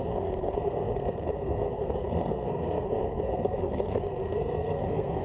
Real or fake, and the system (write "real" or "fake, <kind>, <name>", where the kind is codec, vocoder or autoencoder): fake, codec, SNAC